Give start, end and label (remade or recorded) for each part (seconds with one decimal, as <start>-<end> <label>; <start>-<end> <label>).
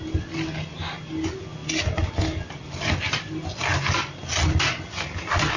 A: 0.0-5.6 recorded